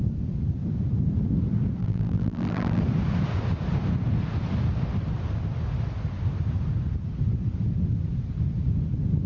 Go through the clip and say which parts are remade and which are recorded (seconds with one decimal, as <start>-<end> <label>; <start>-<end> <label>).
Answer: 0.0-1.8 recorded; 1.8-2.8 remade; 2.8-9.3 recorded

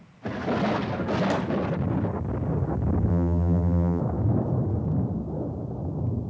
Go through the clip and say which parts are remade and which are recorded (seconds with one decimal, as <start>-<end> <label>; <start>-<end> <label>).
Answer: 0.0-3.1 recorded; 3.1-4.0 remade; 4.0-6.3 recorded

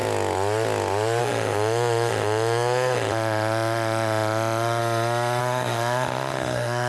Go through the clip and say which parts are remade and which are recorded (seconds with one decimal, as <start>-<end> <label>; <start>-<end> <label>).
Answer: 0.0-1.2 recorded; 1.2-4.8 remade; 4.8-5.4 recorded; 5.4-6.9 remade

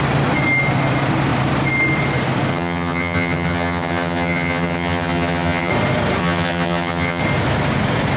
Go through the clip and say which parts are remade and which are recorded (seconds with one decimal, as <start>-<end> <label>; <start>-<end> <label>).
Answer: 0.0-2.5 recorded; 2.5-5.7 remade; 5.7-6.2 recorded; 6.2-7.2 remade; 7.2-8.2 recorded

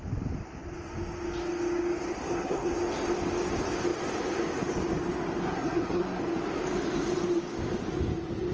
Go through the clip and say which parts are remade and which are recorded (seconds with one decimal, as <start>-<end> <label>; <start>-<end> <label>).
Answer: 0.0-2.2 recorded; 2.2-2.7 remade; 2.7-5.4 recorded; 5.4-6.2 remade; 6.2-8.5 recorded